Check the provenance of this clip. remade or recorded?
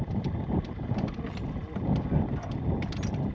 recorded